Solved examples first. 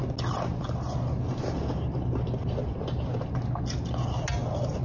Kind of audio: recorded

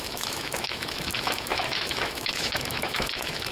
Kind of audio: remade